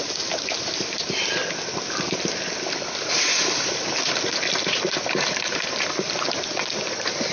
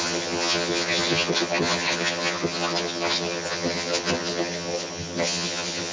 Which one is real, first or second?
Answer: first